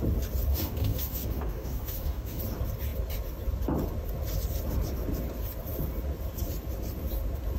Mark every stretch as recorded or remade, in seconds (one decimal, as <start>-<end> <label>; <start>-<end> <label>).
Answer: 0.0-0.5 recorded; 0.5-2.4 remade; 2.4-7.6 recorded